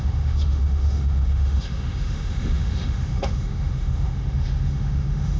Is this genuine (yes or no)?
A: no